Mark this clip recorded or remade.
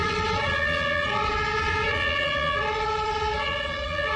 remade